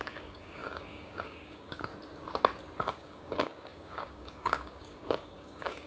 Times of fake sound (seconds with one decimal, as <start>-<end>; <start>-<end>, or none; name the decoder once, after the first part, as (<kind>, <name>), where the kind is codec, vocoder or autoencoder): 0.0-1.9 (codec, DAC); 2.8-5.9

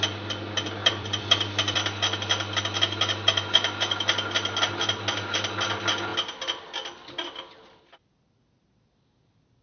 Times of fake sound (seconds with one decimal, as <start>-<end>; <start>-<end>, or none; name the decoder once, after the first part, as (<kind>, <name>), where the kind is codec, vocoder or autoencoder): 0.8-2.6 (vocoder, BigVGAN v2)

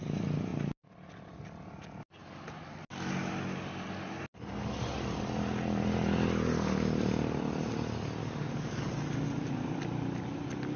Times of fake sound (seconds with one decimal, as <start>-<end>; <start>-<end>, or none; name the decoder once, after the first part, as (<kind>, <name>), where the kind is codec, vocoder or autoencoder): 8.2-8.9 (codec, DAC)

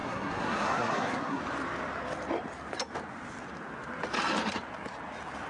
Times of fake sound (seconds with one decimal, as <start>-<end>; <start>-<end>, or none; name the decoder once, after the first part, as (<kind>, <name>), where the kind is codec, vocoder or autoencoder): 0.0-1.4 (codec, SNAC)